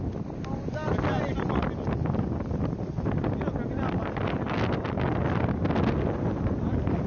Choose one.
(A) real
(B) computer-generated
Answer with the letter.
A